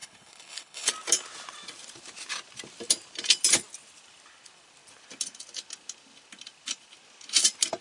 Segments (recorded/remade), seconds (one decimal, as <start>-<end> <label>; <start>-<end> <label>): 0.0-0.9 remade; 0.9-7.8 recorded